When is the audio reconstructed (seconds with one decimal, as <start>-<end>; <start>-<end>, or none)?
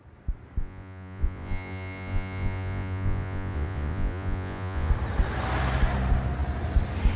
0.6-4.9